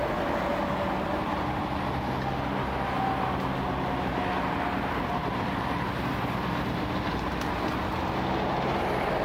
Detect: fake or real real